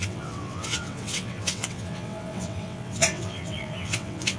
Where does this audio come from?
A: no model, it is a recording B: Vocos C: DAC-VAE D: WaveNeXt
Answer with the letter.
D